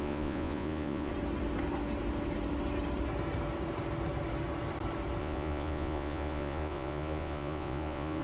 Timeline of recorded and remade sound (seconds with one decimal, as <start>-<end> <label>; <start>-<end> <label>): 0.0-1.1 remade; 1.1-5.2 recorded; 5.2-8.2 remade